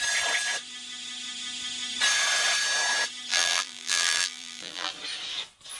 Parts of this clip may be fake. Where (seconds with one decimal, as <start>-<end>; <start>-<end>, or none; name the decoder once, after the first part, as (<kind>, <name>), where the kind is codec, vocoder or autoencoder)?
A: 3.3-4.9 (vocoder, BigVGAN v2)